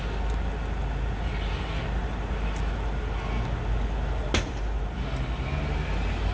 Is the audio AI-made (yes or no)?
no